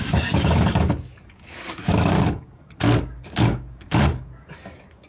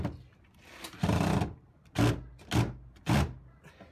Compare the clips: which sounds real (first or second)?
second